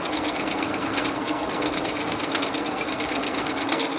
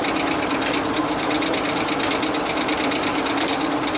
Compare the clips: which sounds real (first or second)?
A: second